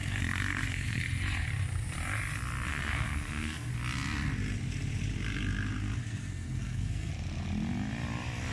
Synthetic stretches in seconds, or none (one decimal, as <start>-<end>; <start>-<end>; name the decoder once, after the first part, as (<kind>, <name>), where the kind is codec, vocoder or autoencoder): 0.0-1.0 (codec, SNAC); 2.7-3.7; 6.0-7.1